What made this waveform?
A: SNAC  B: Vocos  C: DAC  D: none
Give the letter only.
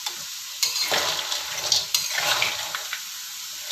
D